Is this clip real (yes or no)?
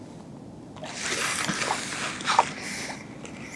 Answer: yes